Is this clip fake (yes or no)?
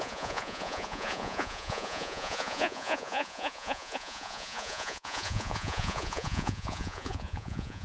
yes